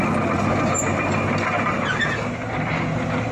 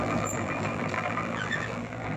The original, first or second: first